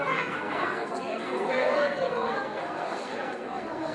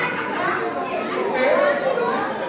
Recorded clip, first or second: second